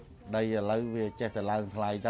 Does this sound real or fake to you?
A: real